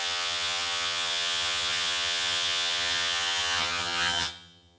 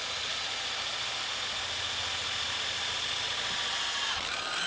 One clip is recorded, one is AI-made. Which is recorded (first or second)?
second